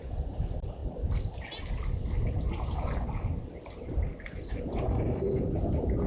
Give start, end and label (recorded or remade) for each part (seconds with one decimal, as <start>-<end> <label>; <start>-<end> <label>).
0.0-4.9 recorded; 4.9-5.4 remade; 5.4-6.1 recorded